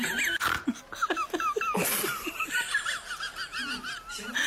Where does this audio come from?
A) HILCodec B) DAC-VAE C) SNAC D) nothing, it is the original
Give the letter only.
D